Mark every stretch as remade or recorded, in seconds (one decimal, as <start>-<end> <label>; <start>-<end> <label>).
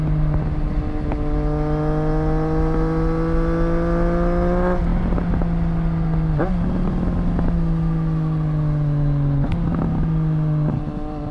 0.0-11.3 recorded